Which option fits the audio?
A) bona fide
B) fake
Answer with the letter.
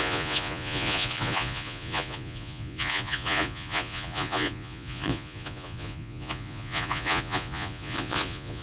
B